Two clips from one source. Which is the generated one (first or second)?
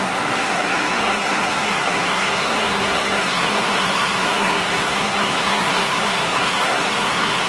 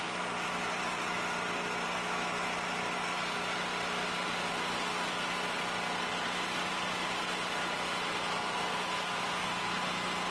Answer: first